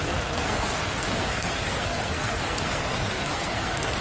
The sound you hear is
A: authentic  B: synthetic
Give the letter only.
B